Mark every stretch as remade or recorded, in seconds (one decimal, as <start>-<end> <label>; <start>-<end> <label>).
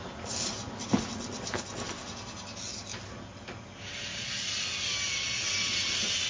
0.0-6.3 recorded